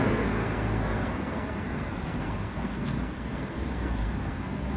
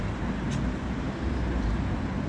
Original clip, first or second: second